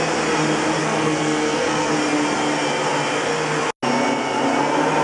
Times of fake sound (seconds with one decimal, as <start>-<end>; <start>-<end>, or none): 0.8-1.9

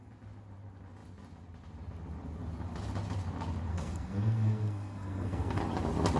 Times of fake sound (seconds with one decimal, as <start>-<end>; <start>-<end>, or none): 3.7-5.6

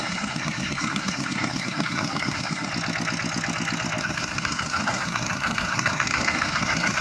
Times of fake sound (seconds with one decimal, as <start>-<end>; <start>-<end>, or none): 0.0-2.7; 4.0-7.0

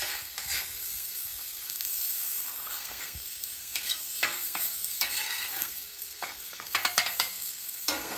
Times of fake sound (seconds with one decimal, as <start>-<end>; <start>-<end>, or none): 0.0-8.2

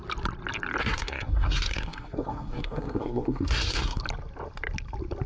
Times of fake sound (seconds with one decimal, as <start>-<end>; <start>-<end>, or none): 0.8-4.0

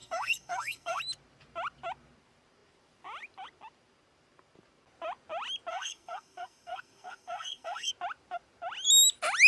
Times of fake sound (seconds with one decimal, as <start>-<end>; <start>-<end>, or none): 0.0-1.0; 5.7-7.9

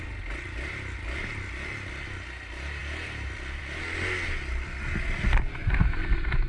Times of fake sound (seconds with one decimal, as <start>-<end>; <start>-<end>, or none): none